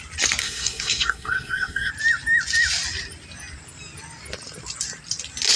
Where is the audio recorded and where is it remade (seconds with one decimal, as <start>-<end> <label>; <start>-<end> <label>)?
0.0-0.4 recorded; 0.4-1.9 remade; 1.9-5.6 recorded